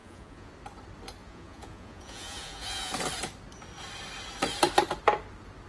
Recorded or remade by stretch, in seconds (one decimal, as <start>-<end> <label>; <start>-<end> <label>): 0.0-0.5 remade; 0.5-1.2 recorded; 1.2-2.9 remade; 2.9-5.7 recorded